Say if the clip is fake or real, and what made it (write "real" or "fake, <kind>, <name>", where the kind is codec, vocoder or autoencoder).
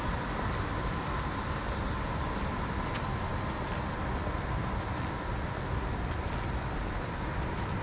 real